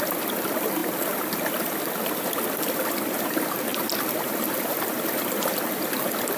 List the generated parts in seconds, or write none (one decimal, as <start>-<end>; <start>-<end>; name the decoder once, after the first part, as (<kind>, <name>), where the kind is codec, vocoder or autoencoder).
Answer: 0.8-3.2 (vocoder, BigVGAN v2); 3.7-6.0

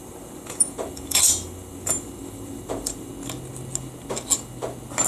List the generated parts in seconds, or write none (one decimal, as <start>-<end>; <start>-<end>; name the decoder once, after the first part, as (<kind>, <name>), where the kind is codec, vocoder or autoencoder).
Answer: 0.0-3.1 (vocoder, BigVGAN v2)